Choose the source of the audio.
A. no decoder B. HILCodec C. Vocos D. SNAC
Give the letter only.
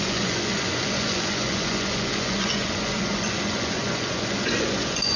C